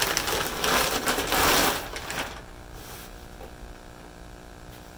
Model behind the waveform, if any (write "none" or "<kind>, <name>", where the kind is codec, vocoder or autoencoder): none